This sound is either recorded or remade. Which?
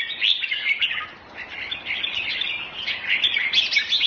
recorded